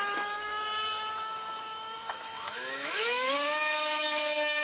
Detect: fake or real fake